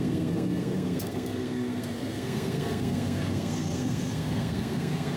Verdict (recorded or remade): remade